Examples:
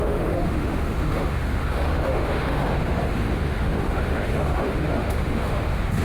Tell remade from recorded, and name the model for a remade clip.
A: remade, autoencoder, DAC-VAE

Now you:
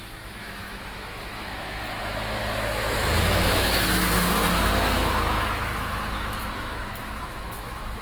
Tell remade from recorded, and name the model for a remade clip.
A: remade, autoencoder, DAC-VAE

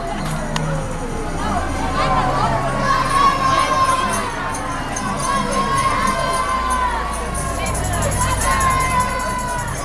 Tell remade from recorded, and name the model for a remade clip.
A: recorded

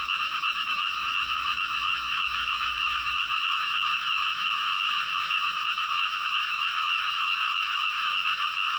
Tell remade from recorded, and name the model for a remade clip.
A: remade, autoencoder, DAC-VAE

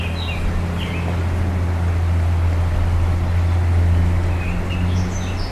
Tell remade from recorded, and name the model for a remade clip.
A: recorded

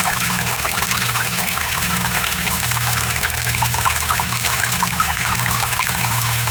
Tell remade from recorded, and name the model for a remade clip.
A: remade, autoencoder, DAC-VAE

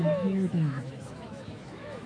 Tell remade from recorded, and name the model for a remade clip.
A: remade, autoencoder, DAC-VAE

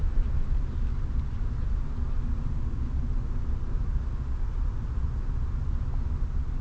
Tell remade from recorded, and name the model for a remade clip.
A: recorded